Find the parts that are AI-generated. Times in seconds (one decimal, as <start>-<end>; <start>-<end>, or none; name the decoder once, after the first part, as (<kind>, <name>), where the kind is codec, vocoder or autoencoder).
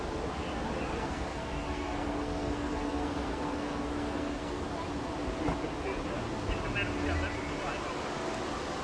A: 0.9-4.6 (codec, SNAC)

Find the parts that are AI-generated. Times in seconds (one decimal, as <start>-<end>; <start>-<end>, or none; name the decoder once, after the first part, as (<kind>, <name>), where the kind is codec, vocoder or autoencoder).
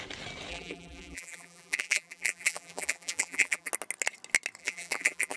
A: 0.5-3.7 (vocoder, BigVGAN v2); 4.6-5.4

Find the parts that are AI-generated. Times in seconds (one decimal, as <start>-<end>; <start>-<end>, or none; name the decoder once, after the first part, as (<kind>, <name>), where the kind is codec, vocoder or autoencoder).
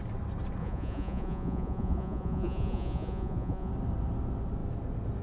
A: 0.6-3.7 (vocoder, Vocos)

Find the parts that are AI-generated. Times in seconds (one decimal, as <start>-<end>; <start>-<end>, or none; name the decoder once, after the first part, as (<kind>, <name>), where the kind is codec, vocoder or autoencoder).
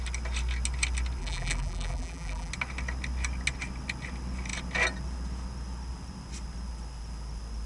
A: 1.2-2.5 (vocoder, BigVGAN v2)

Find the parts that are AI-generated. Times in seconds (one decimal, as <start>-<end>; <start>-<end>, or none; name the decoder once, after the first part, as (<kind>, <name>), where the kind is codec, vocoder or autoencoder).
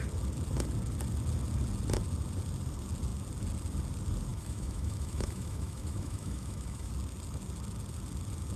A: 4.3-6.9 (autoencoder, DAC-VAE)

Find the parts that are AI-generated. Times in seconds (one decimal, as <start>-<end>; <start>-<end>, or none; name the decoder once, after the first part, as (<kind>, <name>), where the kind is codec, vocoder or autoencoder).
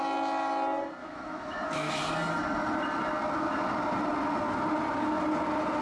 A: 1.0-2.0 (autoencoder, DAC-VAE)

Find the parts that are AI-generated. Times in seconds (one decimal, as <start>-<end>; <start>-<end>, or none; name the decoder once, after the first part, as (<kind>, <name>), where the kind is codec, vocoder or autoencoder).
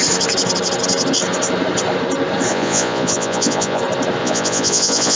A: 2.5-3.8 (vocoder, Vocos); 4.2-5.2